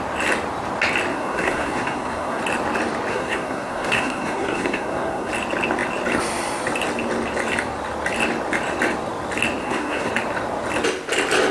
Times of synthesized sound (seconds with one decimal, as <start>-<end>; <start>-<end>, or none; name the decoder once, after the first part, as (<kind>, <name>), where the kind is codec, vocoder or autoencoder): 1.1-2.4 (codec, SNAC); 3.1-5.3; 9.6-10.1